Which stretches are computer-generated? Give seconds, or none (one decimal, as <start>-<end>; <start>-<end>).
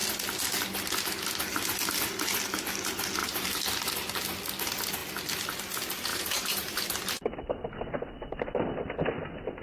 3.2-3.9; 6.1-7.1